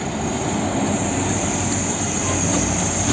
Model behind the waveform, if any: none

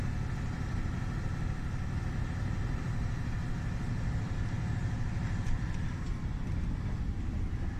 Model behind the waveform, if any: none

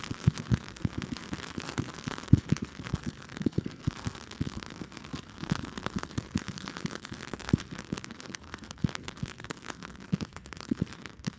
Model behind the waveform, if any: codec, SNAC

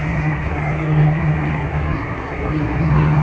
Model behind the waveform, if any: codec, SNAC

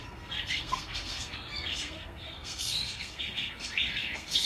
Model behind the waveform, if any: codec, SNAC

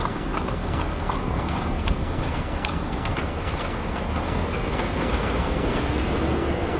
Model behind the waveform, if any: codec, SNAC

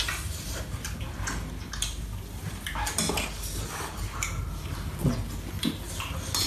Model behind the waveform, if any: none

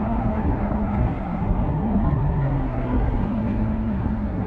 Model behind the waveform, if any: codec, SNAC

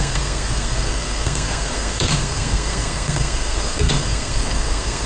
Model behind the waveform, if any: codec, SNAC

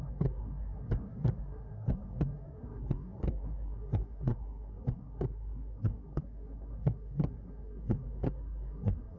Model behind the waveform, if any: codec, SNAC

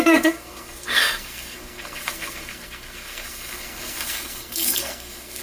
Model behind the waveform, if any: codec, SNAC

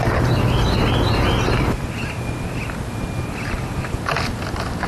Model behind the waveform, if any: none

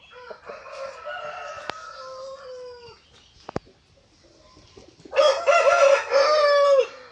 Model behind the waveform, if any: none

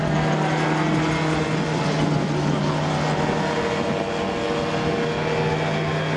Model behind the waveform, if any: none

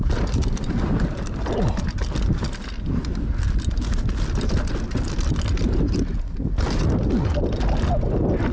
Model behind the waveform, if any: none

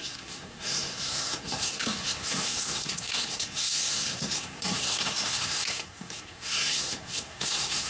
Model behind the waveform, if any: codec, SNAC